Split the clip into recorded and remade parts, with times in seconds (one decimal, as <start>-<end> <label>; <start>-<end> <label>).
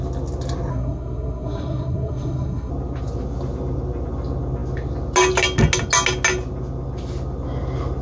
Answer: 0.0-0.7 recorded; 0.7-2.7 remade; 2.7-8.0 recorded